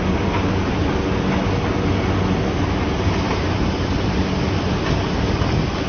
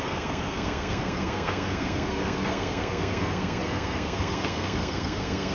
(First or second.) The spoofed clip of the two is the second